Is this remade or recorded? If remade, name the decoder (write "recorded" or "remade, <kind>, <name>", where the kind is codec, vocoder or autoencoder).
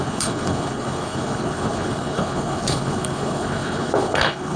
remade, codec, HILCodec